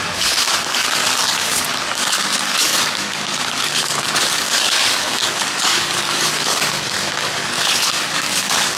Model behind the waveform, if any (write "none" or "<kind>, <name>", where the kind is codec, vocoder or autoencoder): codec, DAC